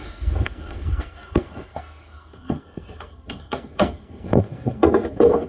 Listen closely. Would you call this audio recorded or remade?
remade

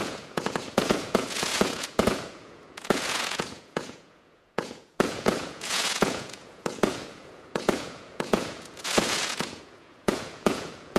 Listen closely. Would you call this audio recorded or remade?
remade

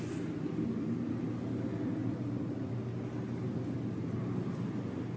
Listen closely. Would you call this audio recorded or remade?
recorded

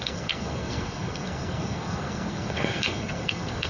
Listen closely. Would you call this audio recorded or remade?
remade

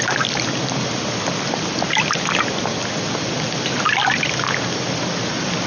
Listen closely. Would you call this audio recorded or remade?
recorded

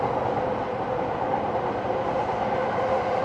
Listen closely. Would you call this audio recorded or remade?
recorded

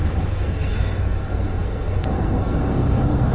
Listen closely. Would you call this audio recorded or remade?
remade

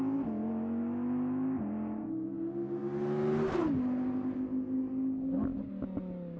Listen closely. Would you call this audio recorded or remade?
recorded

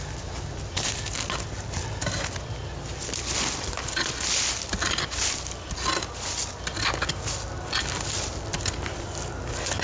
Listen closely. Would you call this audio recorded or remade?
recorded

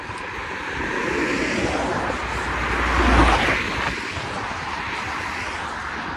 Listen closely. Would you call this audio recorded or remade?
recorded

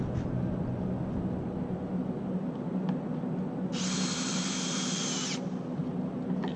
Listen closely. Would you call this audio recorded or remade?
recorded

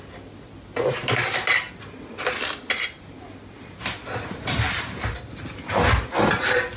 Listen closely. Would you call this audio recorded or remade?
recorded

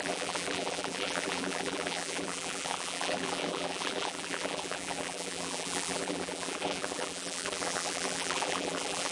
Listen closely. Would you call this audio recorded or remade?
remade